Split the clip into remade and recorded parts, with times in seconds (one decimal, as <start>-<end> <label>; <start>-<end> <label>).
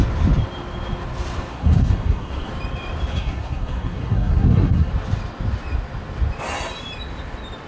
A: 0.0-1.5 recorded; 1.5-2.5 remade; 2.5-3.1 recorded; 3.1-4.9 remade; 4.9-7.7 recorded